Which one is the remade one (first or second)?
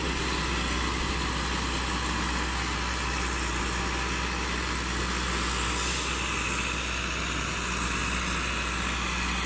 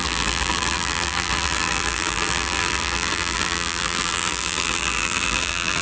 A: second